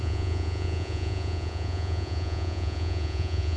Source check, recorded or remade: remade